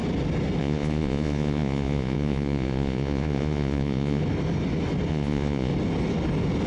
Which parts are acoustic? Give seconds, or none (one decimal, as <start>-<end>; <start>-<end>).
0.0-0.6; 4.2-5.1; 5.7-6.7